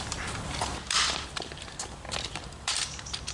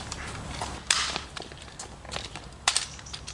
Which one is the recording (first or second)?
second